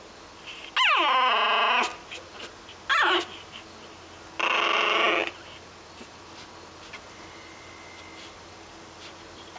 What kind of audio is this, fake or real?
real